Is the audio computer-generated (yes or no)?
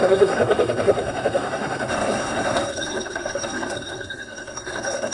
yes